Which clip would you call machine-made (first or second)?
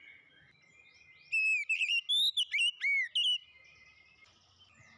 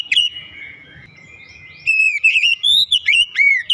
second